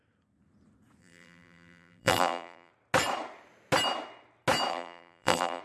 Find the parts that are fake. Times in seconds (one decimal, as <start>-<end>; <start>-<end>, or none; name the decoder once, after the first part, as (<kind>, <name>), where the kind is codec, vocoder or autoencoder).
1.0-2.7 (vocoder, BigVGAN v2); 4.7-5.6